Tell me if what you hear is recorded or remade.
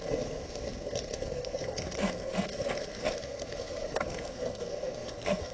remade